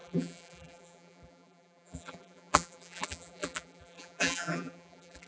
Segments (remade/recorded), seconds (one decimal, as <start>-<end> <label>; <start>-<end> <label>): 0.0-5.3 remade